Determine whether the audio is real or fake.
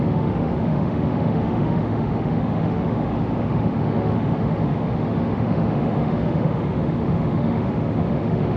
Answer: fake